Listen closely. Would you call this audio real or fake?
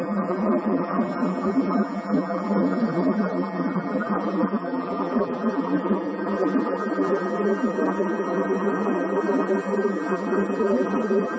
fake